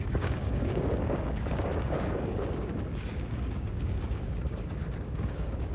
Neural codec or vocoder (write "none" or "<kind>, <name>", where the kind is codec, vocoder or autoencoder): codec, DAC